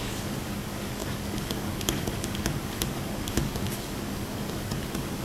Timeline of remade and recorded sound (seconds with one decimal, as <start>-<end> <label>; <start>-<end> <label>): 0.0-5.2 remade